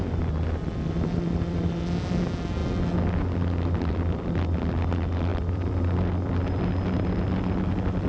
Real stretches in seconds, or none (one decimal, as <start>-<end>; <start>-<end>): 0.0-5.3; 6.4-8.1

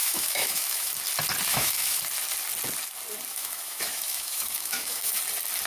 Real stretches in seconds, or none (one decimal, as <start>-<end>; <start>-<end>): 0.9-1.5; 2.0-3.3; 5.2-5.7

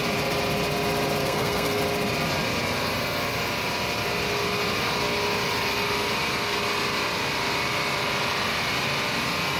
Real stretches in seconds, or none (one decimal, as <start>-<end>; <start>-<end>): 0.0-1.2; 1.8-9.6

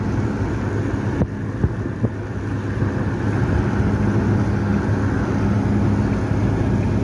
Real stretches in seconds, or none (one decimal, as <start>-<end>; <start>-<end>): 0.0-7.0